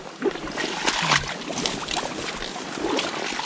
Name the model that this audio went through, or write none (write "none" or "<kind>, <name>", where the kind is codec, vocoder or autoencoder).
none